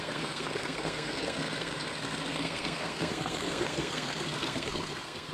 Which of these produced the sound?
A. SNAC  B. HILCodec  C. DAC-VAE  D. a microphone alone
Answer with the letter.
A